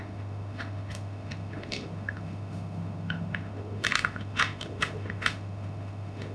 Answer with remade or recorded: remade